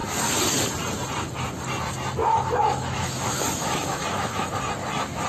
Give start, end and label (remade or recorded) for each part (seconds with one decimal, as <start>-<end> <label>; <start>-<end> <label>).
0.0-2.2 recorded; 2.2-4.5 remade; 4.5-5.3 recorded